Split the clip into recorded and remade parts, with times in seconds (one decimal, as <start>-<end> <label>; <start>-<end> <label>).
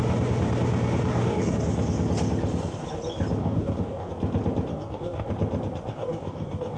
0.0-1.1 recorded; 1.1-1.6 remade; 1.6-3.4 recorded; 3.4-4.1 remade; 4.1-4.7 recorded; 4.7-5.3 remade; 5.3-5.9 recorded; 5.9-6.8 remade